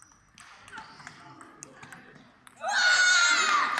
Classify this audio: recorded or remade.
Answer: recorded